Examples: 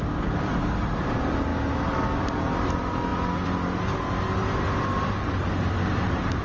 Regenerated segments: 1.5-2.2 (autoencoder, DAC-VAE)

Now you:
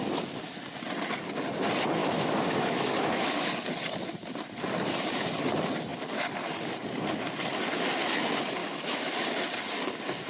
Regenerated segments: 2.0-3.4 (autoencoder, DAC-VAE); 8.6-9.1